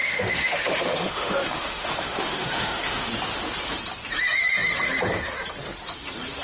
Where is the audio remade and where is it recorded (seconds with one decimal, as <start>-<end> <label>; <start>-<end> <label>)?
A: 0.0-3.1 remade; 3.1-6.4 recorded